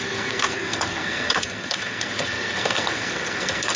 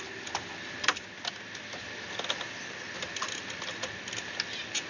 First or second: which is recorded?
second